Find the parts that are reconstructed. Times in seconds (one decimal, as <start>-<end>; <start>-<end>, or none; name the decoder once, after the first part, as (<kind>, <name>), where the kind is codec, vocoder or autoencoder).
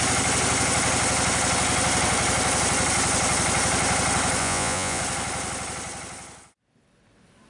4.4-5.0 (vocoder, Vocos)